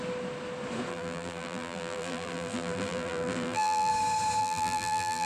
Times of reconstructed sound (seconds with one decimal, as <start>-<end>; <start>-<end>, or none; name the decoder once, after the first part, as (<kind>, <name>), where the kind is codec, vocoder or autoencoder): 0.9-3.9 (vocoder, BigVGAN v2); 4.4-5.3